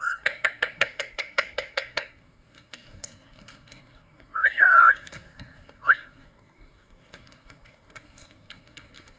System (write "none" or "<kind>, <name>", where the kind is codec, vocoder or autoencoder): codec, SNAC